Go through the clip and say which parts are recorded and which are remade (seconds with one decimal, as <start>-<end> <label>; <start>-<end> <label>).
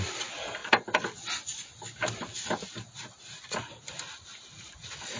0.0-5.2 recorded